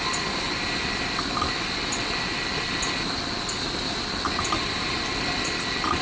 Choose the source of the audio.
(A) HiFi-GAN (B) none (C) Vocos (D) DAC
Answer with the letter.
B